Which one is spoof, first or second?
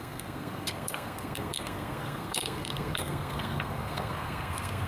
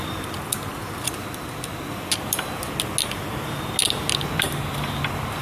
first